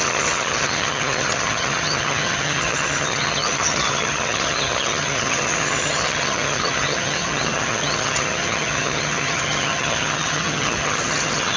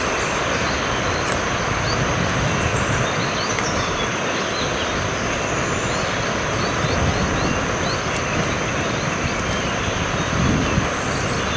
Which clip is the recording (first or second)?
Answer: second